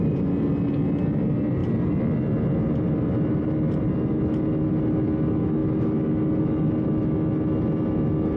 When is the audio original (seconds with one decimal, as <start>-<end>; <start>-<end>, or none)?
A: 0.0-8.4